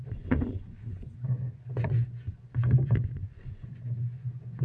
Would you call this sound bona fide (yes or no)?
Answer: no